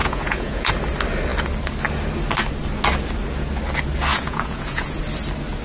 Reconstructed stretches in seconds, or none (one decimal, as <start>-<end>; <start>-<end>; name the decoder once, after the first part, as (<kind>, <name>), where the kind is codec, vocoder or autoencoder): 0.0-0.7 (vocoder, Vocos); 4.1-5.0

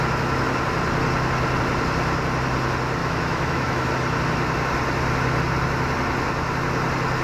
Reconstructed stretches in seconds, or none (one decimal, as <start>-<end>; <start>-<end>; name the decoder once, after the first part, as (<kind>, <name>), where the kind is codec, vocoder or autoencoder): 3.0-3.9 (autoencoder, DAC-VAE)

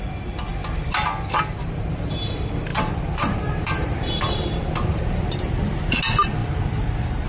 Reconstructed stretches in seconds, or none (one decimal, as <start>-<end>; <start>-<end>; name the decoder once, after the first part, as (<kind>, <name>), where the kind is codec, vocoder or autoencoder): 2.7-6.0 (vocoder, BigVGAN v2); 6.4-7.3

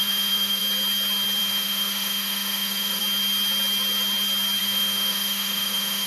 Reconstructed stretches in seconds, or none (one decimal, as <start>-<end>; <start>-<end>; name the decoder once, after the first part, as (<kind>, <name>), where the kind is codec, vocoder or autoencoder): 0.0-0.6 (autoencoder, DAC-VAE); 1.4-3.0; 4.6-6.1